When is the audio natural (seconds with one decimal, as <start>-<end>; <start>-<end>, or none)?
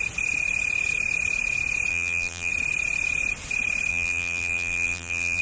0.0-1.9; 2.5-3.9